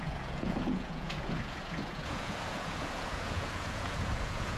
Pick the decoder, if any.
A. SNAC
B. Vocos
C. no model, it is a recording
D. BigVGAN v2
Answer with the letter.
B